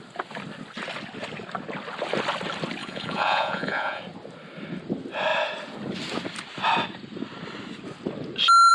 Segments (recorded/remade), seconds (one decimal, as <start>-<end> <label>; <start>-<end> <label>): 0.0-2.8 recorded; 2.8-4.0 remade; 4.0-8.7 recorded